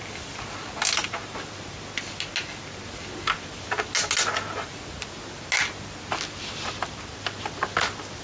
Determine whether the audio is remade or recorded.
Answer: recorded